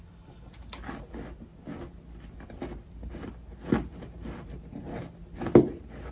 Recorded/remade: recorded